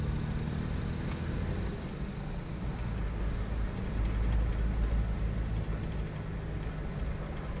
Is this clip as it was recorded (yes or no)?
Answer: yes